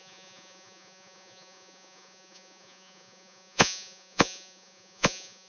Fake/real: fake